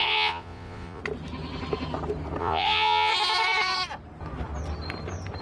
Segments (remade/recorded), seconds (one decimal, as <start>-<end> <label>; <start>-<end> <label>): 0.0-1.0 remade; 1.0-2.4 recorded; 2.4-3.1 remade; 3.1-5.4 recorded